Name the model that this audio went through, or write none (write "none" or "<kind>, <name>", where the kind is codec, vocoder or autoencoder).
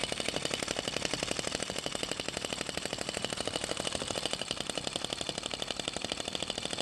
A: vocoder, BigVGAN v2